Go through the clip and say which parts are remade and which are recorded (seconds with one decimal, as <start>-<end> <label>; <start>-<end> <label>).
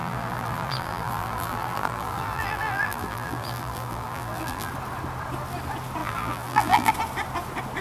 0.0-4.7 remade; 4.7-6.0 recorded; 6.0-6.9 remade; 6.9-7.8 recorded